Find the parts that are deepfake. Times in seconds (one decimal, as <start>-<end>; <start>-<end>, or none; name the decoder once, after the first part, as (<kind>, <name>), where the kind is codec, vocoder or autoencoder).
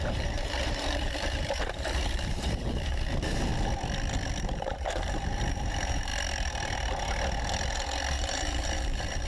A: 0.0-3.5 (vocoder, BigVGAN v2); 4.4-6.1; 8.1-9.3